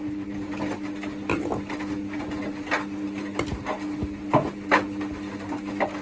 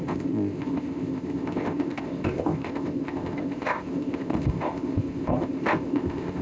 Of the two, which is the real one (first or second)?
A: first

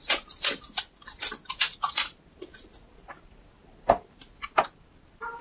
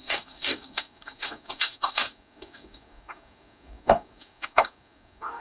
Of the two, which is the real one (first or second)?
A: first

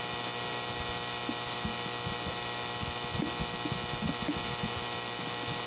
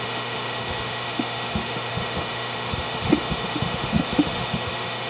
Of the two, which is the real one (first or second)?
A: first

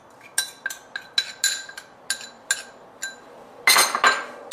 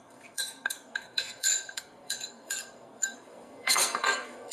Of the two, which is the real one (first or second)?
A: first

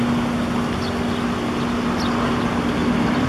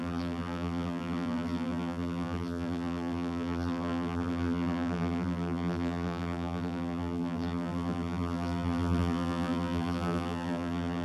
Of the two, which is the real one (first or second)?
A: first